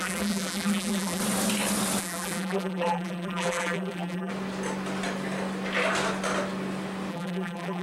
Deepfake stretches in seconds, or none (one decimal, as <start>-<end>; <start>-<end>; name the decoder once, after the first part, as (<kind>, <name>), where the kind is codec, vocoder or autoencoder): 0.0-1.2 (vocoder, BigVGAN v2); 2.0-4.3; 7.1-7.8